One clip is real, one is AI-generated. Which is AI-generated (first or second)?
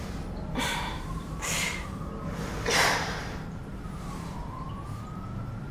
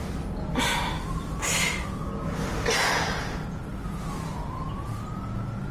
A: first